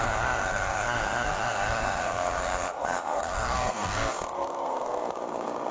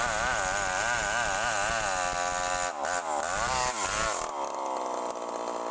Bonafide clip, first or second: second